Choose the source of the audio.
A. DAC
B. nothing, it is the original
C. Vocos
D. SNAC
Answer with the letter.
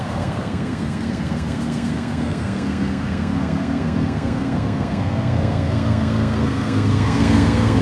D